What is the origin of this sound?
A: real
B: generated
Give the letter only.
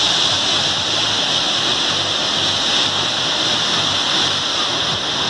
A